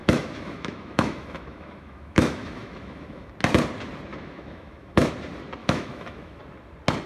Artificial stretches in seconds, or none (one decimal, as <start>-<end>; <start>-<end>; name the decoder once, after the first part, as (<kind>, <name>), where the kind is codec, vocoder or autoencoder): 0.0-3.3 (autoencoder, DAC-VAE); 4.1-5.1; 5.6-6.4